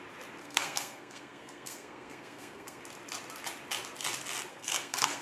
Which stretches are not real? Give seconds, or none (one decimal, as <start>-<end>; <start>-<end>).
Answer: 0.4-2.8; 4.5-5.2